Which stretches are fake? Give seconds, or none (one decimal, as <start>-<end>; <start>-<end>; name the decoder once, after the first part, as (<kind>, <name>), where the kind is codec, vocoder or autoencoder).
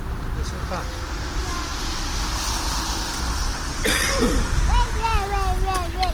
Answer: none